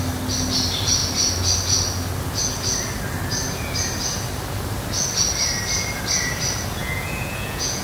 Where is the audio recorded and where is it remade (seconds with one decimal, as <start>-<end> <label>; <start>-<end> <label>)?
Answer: 0.0-6.8 recorded; 6.8-7.8 remade